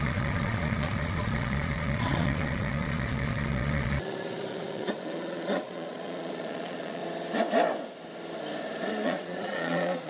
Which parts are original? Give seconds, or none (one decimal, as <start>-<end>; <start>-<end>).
7.0-8.9